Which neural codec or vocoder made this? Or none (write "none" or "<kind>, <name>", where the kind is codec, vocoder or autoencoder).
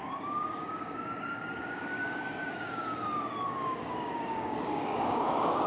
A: codec, DAC